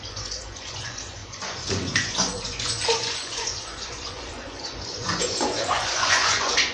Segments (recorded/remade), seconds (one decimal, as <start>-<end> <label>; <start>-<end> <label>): 0.0-6.7 remade